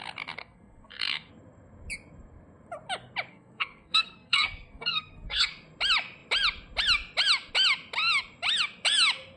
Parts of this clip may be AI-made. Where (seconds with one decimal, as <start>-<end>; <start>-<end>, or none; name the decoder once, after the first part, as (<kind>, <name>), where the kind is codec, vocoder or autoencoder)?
0.4-1.3 (codec, SNAC); 3.3-5.5